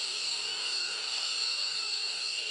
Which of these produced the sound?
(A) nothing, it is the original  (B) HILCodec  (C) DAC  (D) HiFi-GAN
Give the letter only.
C